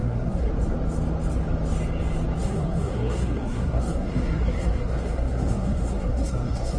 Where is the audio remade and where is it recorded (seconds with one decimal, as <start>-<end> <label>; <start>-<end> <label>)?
0.0-0.5 remade; 0.5-2.4 recorded; 2.4-6.8 remade